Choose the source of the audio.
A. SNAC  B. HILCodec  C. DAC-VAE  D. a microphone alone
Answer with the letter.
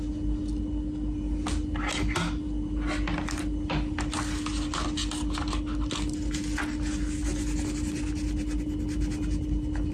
D